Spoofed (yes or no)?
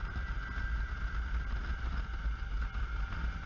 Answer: no